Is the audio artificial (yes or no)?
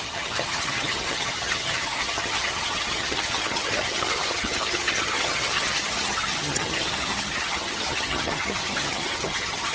yes